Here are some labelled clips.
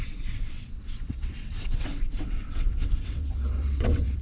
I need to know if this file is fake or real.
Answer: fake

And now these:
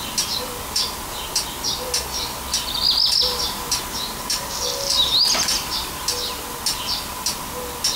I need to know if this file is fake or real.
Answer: real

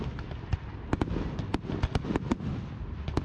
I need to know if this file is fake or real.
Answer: real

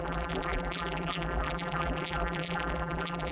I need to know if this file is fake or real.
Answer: fake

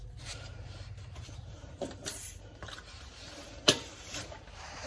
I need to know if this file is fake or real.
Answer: fake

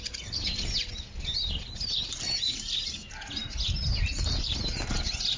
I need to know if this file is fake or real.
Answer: real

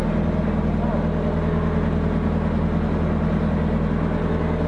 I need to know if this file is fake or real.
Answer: real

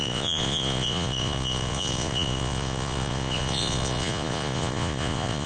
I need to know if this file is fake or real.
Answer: fake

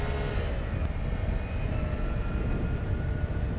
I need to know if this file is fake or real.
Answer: real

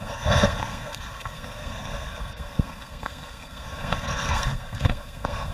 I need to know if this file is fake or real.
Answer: fake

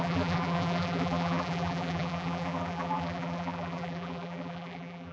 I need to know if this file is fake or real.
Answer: fake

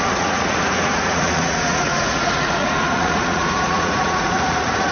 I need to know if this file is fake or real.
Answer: fake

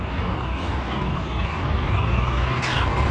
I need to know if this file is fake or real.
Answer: fake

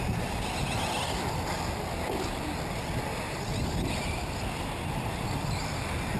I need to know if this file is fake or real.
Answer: real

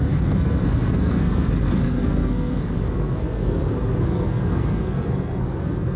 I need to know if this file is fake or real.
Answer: fake